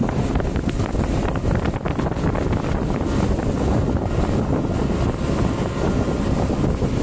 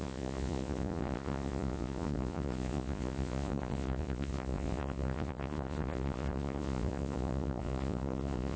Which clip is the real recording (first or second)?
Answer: first